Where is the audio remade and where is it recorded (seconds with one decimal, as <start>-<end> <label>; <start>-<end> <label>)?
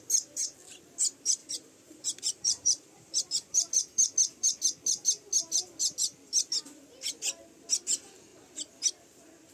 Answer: 0.0-1.4 recorded; 1.4-3.1 remade; 3.1-9.5 recorded